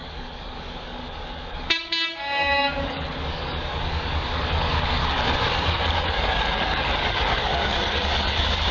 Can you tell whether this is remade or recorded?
remade